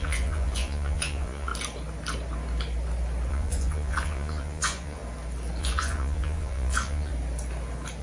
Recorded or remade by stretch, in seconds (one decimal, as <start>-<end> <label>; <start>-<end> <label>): 0.0-1.5 remade; 1.5-3.3 recorded; 3.3-5.0 remade; 5.0-5.6 recorded; 5.6-7.1 remade; 7.1-8.0 recorded